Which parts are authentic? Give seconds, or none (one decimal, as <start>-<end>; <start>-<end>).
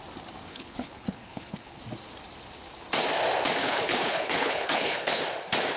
0.0-0.5; 1.8-3.6; 5.2-5.8